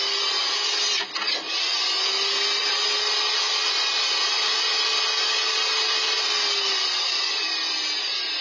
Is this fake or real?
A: real